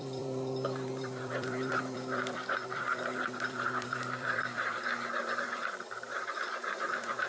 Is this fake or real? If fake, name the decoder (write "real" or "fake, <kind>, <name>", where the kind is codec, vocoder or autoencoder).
fake, vocoder, BigVGAN v2